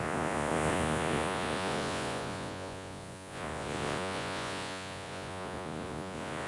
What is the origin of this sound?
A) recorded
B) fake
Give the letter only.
B